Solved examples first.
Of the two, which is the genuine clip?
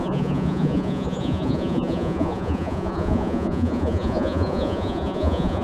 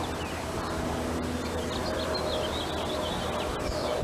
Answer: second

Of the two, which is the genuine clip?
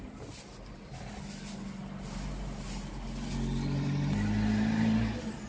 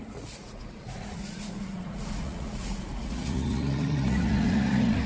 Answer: first